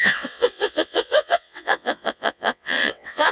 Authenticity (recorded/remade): remade